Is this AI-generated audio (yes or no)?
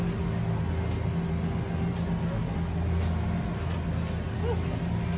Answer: no